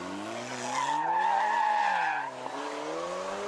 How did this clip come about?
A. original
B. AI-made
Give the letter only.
A